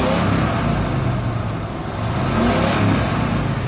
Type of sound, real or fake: real